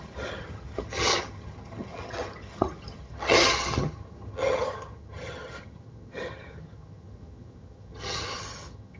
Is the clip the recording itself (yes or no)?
no